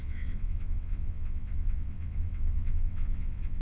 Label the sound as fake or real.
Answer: fake